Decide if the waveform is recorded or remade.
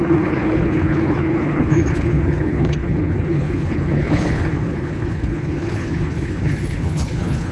remade